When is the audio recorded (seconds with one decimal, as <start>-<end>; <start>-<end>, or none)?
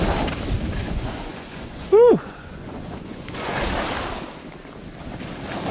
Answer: 0.0-0.8; 3.6-5.7